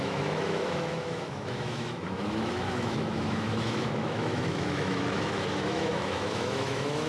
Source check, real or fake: fake